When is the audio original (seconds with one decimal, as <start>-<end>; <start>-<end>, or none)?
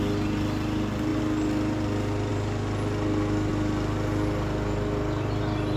0.0-5.8